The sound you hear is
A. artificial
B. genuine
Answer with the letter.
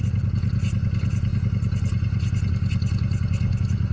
B